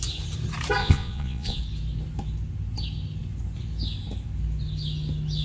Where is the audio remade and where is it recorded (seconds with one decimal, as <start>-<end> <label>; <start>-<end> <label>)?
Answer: 0.0-0.8 recorded; 0.8-1.6 remade; 1.6-5.4 recorded

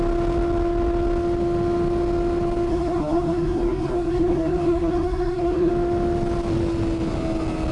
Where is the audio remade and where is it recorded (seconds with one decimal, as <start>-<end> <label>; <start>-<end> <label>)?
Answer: 0.0-2.7 recorded; 2.7-5.7 remade; 5.7-7.7 recorded

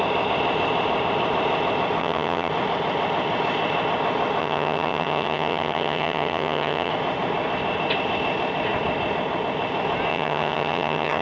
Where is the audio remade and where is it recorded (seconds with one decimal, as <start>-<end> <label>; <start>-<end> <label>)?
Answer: 0.0-2.0 recorded; 2.0-2.5 remade; 2.5-4.4 recorded; 4.4-6.9 remade; 6.9-10.1 recorded; 10.1-11.2 remade

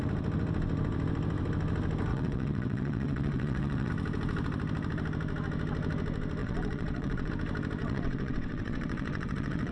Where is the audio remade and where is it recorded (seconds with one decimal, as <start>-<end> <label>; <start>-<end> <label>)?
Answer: 0.0-2.1 recorded; 2.1-3.9 remade; 3.9-6.4 recorded; 6.4-7.3 remade; 7.3-7.8 recorded; 7.8-9.7 remade

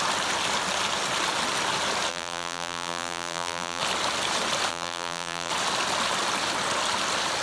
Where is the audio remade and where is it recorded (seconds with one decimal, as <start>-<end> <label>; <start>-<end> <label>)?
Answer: 0.0-2.1 recorded; 2.1-3.8 remade; 3.8-4.7 recorded; 4.7-5.5 remade; 5.5-7.4 recorded